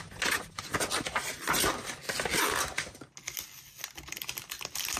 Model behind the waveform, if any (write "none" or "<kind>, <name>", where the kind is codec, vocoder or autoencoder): none